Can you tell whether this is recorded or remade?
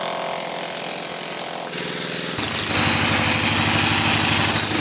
recorded